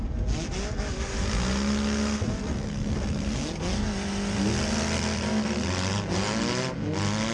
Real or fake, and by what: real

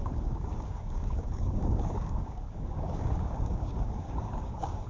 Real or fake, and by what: fake, codec, DAC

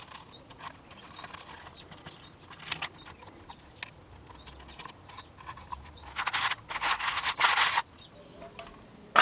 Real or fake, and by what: real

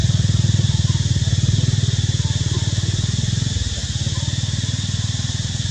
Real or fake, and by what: real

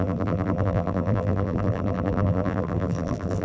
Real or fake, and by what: fake, vocoder, BigVGAN v2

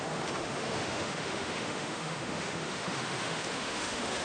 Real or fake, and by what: fake, autoencoder, DAC-VAE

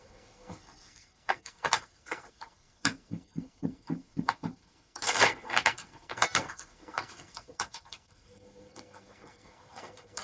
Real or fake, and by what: fake, codec, SNAC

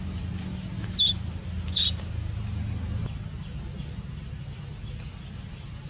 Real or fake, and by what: real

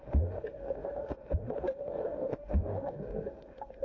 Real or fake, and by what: fake, autoencoder, DAC-VAE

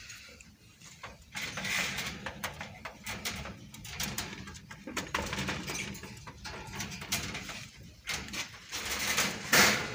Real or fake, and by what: fake, vocoder, BigVGAN v2